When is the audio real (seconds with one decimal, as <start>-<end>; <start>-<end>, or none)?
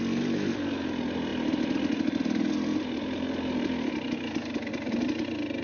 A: 0.0-5.6